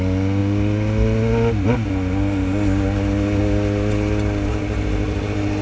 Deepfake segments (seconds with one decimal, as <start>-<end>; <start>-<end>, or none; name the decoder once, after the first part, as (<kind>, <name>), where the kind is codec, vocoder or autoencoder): none